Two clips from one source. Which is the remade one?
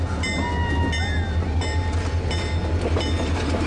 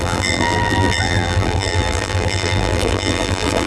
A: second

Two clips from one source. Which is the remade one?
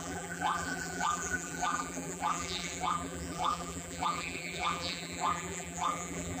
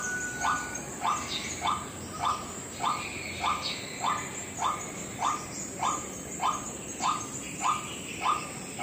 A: first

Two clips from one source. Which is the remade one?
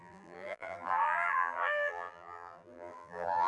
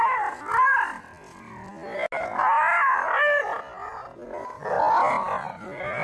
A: first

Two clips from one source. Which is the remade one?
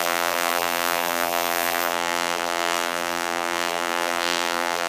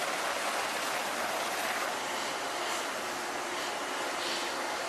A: first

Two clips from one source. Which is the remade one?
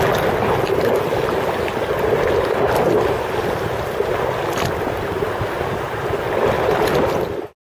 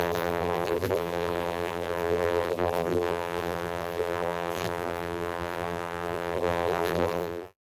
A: second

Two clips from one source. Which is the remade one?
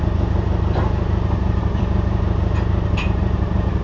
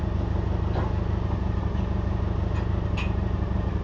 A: first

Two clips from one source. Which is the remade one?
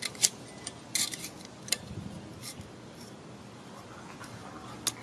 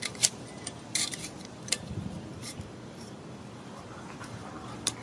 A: second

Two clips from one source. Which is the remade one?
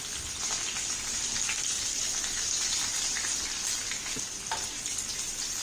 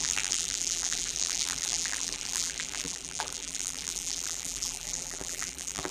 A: second